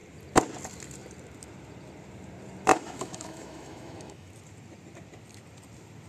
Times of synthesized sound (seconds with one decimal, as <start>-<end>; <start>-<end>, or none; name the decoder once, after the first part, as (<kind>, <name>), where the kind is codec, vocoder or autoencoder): 2.7-4.3 (autoencoder, DAC-VAE)